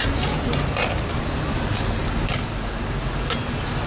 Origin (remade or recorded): recorded